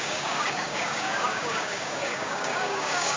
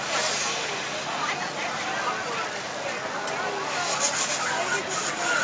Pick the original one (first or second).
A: second